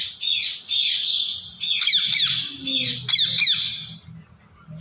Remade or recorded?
recorded